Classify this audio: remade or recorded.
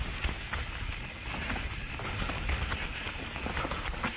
recorded